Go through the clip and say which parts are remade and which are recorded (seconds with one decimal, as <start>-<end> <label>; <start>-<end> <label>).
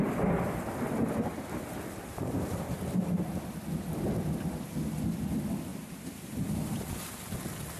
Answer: 0.0-2.1 recorded; 2.1-3.0 remade; 3.0-5.7 recorded; 5.7-7.3 remade; 7.3-7.8 recorded